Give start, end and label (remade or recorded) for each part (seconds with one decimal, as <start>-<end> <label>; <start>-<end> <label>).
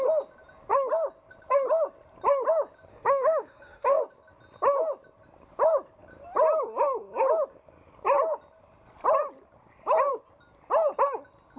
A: 0.0-2.9 recorded; 2.9-4.0 remade; 4.0-11.6 recorded